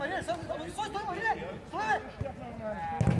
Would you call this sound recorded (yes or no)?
yes